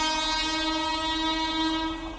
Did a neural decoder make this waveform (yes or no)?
no